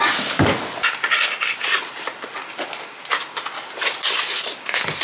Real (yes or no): yes